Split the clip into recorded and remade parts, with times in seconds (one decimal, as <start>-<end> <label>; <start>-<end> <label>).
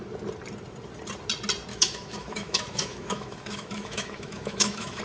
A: 0.0-1.7 recorded; 1.7-5.0 remade